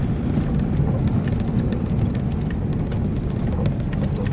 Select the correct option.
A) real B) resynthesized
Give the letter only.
A